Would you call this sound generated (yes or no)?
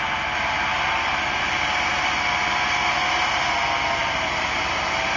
no